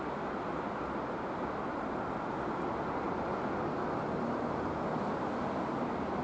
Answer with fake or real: real